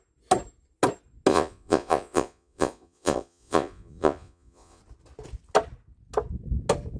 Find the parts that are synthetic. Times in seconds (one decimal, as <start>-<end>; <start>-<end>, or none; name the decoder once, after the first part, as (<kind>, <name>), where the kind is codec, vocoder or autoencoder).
1.3-4.8 (vocoder, Vocos)